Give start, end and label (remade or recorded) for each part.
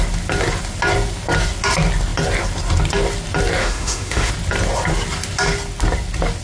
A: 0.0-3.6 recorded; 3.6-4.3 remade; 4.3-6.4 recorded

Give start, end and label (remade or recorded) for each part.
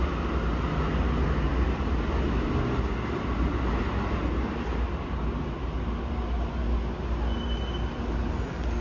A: 0.0-8.8 recorded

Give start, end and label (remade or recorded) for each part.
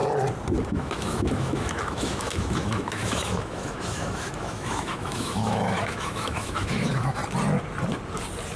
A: 0.0-0.7 recorded; 0.7-7.2 remade; 7.2-8.6 recorded